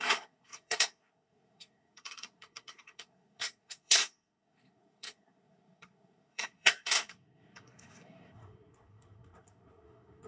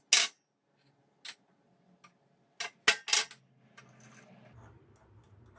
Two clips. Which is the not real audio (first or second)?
first